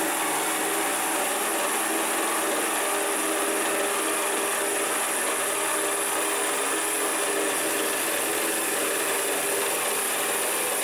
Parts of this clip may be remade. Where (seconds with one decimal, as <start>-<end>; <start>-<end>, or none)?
none